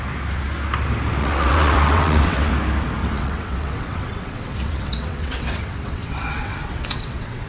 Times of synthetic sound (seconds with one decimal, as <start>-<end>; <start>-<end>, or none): 1.2-2.5; 3.0-7.5